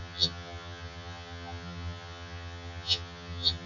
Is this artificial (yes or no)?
yes